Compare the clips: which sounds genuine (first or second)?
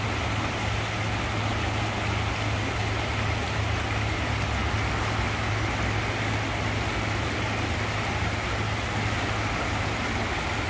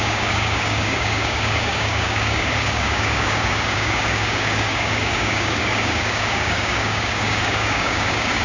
first